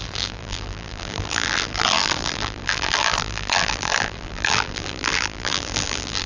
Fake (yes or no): yes